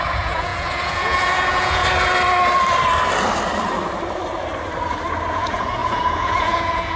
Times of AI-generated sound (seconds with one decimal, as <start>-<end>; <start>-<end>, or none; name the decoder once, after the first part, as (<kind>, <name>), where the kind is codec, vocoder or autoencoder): 0.0-1.8 (vocoder, Vocos); 5.3-7.0